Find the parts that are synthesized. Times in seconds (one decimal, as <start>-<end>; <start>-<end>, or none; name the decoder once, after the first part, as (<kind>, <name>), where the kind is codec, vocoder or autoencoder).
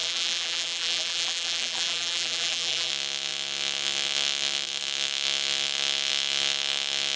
0.0-2.9 (vocoder, BigVGAN v2)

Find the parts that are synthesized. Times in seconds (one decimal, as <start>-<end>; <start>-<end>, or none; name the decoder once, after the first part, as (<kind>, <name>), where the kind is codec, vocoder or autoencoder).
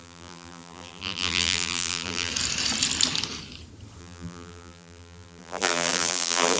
0.0-2.3 (vocoder, BigVGAN v2); 4.0-6.6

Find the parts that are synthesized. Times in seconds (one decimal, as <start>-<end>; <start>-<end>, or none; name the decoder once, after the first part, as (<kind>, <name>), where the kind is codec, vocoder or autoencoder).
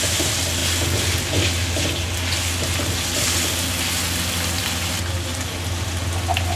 none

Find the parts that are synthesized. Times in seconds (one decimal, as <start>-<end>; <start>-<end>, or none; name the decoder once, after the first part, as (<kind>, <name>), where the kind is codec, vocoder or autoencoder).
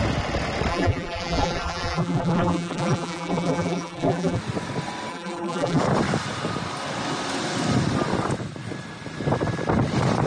0.7-4.4 (vocoder, BigVGAN v2); 5.1-5.8